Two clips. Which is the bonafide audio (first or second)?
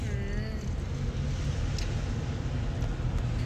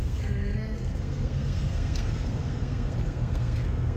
first